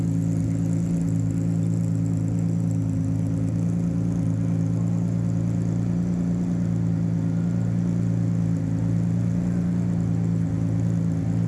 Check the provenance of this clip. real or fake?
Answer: real